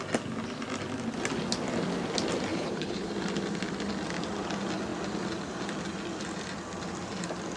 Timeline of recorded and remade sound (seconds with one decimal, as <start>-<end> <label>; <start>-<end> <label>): 0.0-2.5 recorded; 2.5-3.1 remade; 3.1-7.6 recorded

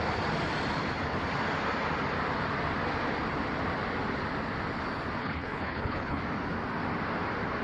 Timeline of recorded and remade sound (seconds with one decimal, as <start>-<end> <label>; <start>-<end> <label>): 0.0-5.2 recorded; 5.2-6.2 remade; 6.2-7.6 recorded

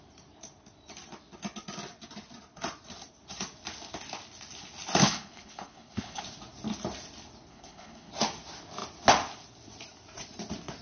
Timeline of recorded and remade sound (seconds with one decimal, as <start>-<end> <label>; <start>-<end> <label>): 0.0-5.0 recorded; 5.0-6.2 remade; 6.2-7.5 recorded; 7.5-8.1 remade; 8.1-10.8 recorded

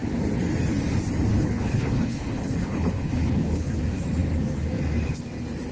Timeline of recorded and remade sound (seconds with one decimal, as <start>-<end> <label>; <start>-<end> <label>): 0.0-1.3 recorded; 1.3-3.8 remade; 3.8-5.7 recorded

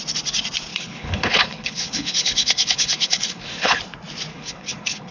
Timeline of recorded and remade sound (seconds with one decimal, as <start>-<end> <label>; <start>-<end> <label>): 0.0-0.7 recorded; 0.7-3.8 remade; 3.8-4.3 recorded; 4.3-5.1 remade

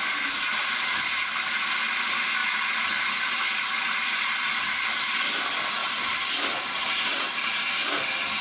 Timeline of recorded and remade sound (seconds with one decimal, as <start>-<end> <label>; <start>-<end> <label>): 0.0-8.4 recorded